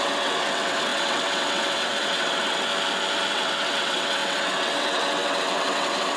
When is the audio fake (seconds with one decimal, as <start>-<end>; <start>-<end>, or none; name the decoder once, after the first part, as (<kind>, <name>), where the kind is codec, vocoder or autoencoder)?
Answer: 0.0-2.7 (vocoder, WaveNeXt); 3.3-6.2